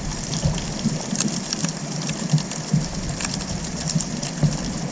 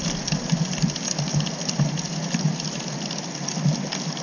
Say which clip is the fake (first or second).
first